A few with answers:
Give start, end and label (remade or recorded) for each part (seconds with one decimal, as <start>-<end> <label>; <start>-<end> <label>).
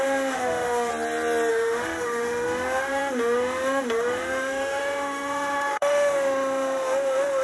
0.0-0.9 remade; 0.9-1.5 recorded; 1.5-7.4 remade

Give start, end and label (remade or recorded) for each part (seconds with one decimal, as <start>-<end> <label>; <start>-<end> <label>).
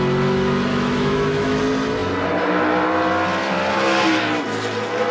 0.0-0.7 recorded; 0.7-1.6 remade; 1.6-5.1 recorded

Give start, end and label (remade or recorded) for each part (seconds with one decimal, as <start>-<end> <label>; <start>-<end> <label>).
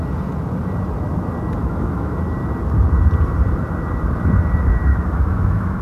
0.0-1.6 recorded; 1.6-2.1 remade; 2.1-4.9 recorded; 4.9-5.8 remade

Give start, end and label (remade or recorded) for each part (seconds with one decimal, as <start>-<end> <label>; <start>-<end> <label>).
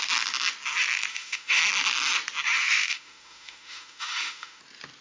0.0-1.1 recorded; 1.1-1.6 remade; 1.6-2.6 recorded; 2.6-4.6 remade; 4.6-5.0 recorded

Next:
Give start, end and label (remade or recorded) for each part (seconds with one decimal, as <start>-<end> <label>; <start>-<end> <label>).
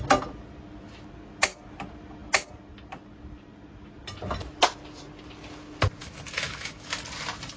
0.0-6.0 recorded; 6.0-6.9 remade; 6.9-7.6 recorded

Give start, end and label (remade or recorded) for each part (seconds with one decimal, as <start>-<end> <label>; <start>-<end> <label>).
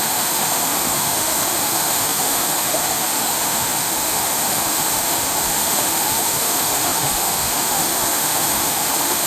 0.0-9.3 remade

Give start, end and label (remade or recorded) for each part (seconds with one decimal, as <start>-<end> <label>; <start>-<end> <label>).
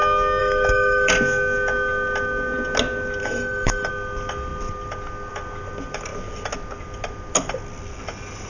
0.0-0.4 recorded; 0.4-1.1 remade; 1.1-3.2 recorded; 3.2-3.9 remade; 3.9-8.5 recorded